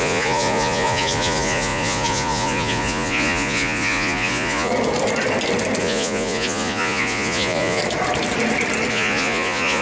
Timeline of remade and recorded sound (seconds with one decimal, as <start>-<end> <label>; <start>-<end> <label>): 0.0-4.7 remade; 4.7-5.8 recorded; 5.8-7.8 remade; 7.8-8.9 recorded; 8.9-9.8 remade